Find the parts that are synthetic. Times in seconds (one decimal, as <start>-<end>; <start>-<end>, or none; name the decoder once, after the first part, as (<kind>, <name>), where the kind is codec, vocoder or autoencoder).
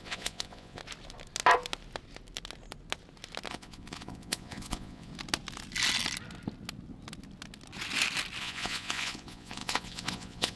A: 0.0-0.8 (vocoder, Vocos); 3.5-5.1; 8.4-10.6